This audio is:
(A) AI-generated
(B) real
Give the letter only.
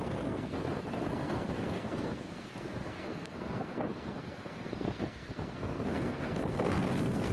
A